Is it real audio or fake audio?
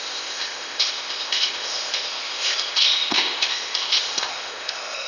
fake